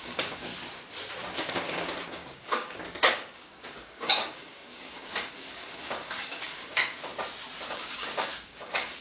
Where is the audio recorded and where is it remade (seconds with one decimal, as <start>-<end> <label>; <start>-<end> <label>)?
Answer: 0.0-0.5 remade; 0.5-1.5 recorded; 1.5-7.1 remade; 7.1-7.7 recorded; 7.7-9.0 remade